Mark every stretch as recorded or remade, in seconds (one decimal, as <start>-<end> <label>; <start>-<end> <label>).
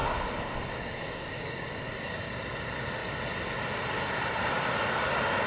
0.0-2.3 remade; 2.3-5.5 recorded